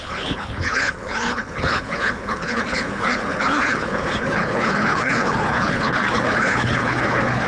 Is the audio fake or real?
fake